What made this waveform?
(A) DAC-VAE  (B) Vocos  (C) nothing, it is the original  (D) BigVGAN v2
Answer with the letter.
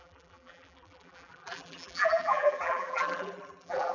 D